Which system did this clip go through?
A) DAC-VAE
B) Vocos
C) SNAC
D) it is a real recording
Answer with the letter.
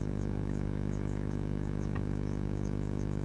A